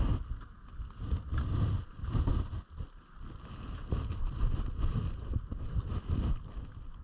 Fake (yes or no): no